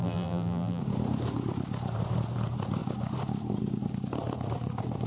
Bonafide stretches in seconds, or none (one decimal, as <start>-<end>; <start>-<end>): 0.8-5.1